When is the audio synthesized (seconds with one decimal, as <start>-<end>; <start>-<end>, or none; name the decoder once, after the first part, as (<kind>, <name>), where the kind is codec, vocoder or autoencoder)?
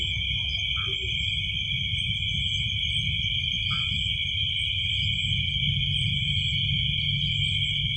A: none